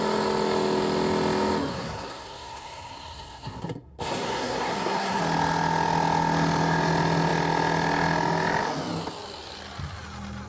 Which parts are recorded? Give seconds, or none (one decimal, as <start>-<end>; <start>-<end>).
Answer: 0.0-1.7; 5.2-10.5

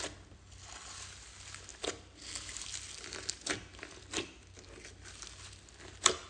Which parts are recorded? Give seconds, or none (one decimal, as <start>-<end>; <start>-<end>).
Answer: 0.0-6.3

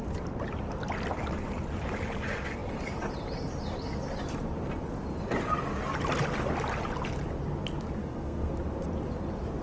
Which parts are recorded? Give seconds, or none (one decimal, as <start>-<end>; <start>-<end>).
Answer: 0.0-8.0; 8.5-9.6

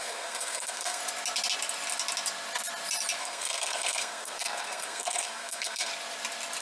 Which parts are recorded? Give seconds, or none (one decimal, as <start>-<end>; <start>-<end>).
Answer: 1.0-3.2; 5.9-6.6

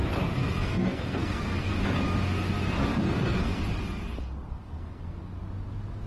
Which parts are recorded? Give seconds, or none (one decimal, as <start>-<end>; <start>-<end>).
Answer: 1.7-2.9; 3.6-4.5; 5.2-6.1

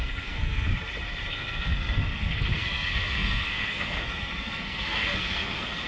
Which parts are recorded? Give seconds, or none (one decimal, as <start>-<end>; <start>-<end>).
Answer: 0.7-1.3

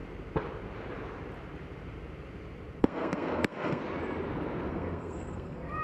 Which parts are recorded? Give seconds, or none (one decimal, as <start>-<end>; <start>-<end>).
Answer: 0.0-2.8; 3.8-4.7